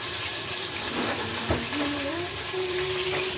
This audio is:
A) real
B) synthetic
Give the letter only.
B